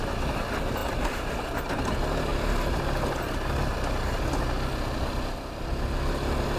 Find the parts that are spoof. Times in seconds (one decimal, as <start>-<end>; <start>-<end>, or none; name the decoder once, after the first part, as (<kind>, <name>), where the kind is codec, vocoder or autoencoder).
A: none